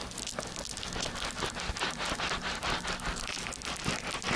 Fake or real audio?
real